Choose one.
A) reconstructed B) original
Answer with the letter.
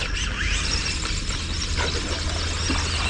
B